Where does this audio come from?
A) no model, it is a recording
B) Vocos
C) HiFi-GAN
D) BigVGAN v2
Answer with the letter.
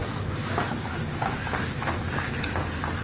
A